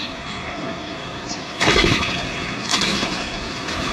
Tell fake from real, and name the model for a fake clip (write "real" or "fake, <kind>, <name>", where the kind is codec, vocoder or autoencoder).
fake, codec, SNAC